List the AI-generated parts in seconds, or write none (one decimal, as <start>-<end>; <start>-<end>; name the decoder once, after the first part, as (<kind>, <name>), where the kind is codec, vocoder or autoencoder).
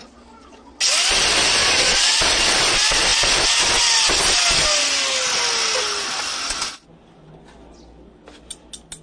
1.6-2.4 (vocoder, Vocos)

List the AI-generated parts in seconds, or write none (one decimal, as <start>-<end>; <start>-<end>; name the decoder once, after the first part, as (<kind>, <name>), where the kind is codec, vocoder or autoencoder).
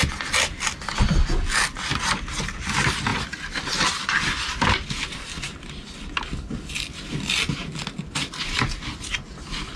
none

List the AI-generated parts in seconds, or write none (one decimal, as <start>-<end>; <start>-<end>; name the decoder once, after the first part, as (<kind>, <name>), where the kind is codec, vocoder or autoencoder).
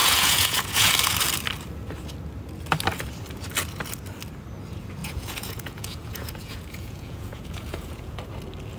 0.0-0.9 (vocoder, Vocos); 5.0-8.2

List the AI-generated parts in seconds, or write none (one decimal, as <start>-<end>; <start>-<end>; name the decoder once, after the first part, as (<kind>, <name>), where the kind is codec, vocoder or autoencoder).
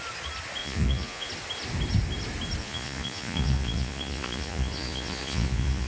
0.6-1.3 (vocoder, Vocos); 2.6-5.9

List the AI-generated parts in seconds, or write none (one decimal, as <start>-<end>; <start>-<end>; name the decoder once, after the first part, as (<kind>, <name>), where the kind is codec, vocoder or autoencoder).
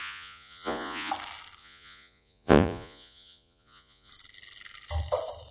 0.0-1.1 (vocoder, Vocos); 1.6-4.1